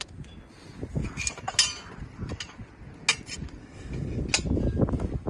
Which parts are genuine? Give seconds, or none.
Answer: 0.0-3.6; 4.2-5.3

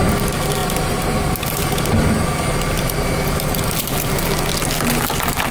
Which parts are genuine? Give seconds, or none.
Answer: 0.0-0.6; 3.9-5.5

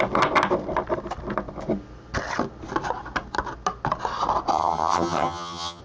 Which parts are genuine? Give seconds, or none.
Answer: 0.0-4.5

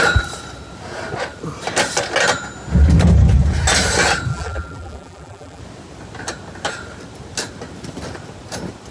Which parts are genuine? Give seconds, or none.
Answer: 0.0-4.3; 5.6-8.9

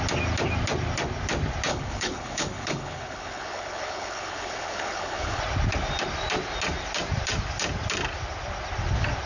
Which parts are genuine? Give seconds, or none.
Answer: 0.0-1.7; 5.4-9.3

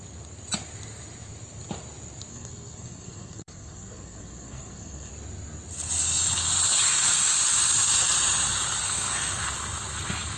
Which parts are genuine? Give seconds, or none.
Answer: 0.0-2.3; 5.1-8.8; 9.4-10.4

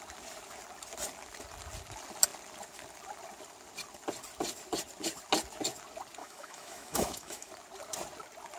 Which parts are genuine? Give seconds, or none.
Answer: 0.0-6.2; 7.5-8.6